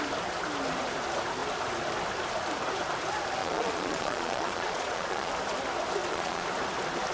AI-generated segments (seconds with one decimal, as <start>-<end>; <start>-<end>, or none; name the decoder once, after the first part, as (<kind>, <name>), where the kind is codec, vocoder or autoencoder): 3.4-5.3 (vocoder, Vocos); 6.0-6.5